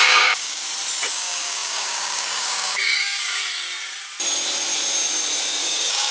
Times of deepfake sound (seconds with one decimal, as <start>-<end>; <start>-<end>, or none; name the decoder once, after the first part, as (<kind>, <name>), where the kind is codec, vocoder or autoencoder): 0.0-0.6 (codec, DAC); 1.1-3.4; 5.6-6.1